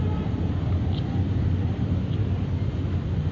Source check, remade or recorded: recorded